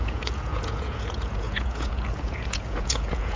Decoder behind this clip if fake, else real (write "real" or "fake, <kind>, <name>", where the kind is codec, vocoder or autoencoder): fake, vocoder, Vocos